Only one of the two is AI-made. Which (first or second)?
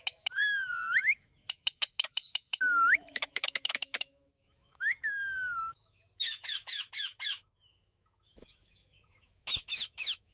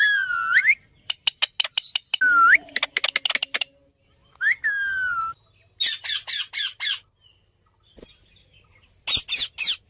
first